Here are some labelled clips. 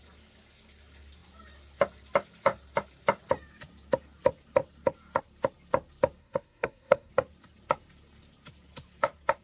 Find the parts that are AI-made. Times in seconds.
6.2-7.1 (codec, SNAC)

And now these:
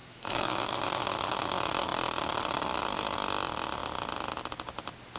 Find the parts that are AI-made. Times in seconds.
0.0-0.7 (autoencoder, DAC-VAE)

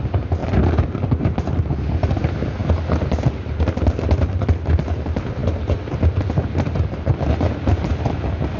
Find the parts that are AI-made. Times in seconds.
0.0-8.6 (vocoder, BigVGAN v2)